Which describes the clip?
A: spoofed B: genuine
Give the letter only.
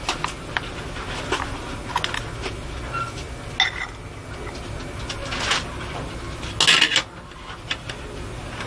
B